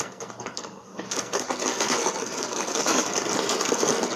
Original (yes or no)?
no